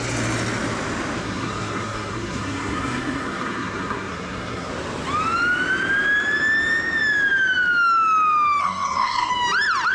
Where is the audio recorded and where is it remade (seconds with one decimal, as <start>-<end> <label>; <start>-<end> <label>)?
0.0-1.2 recorded; 1.2-4.7 remade; 4.7-8.6 recorded; 8.6-9.3 remade; 9.3-9.9 recorded